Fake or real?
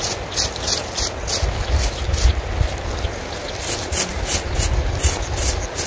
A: real